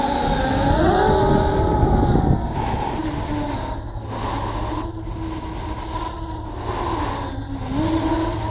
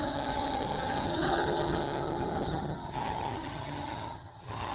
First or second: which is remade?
second